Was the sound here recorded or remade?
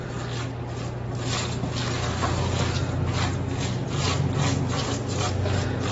recorded